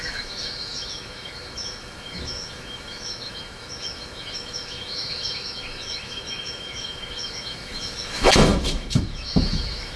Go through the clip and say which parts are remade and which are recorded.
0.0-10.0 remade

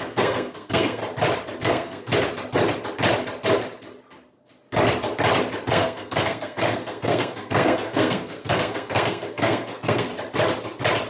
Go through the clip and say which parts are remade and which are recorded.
0.0-1.0 remade; 1.0-1.6 recorded; 1.6-2.1 remade; 2.1-5.7 recorded; 5.7-10.1 remade; 10.1-11.1 recorded

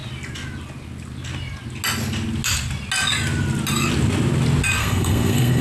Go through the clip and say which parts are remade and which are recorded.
0.0-4.8 recorded; 4.8-5.6 remade

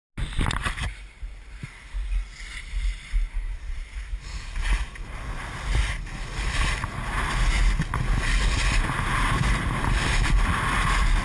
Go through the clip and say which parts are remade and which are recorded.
0.0-0.6 recorded; 0.6-1.7 remade; 1.7-2.5 recorded; 2.5-5.2 remade; 5.2-11.2 recorded

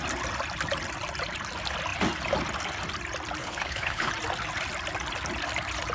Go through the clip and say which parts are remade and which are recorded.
0.0-3.4 recorded; 3.4-4.1 remade; 4.1-5.9 recorded